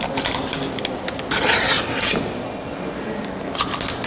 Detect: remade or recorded recorded